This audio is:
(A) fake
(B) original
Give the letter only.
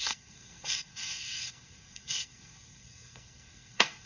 A